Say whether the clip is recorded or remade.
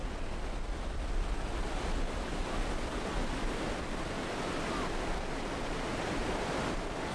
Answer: recorded